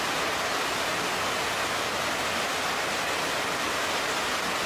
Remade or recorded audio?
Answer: recorded